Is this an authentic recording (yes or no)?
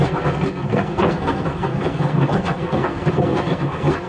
no